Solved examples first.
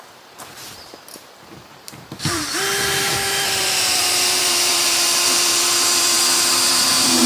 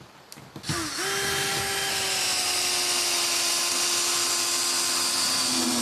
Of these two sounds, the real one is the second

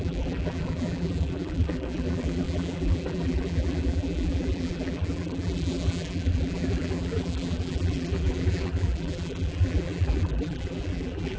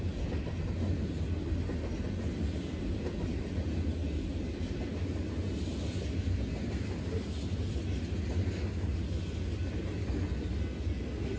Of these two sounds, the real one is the second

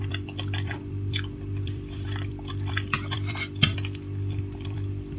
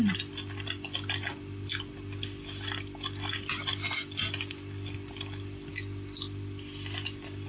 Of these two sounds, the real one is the second